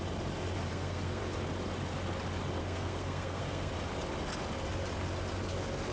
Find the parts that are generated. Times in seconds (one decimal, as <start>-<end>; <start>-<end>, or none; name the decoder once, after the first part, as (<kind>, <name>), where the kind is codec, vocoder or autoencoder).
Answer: 0.7-1.2 (codec, SNAC); 2.6-3.7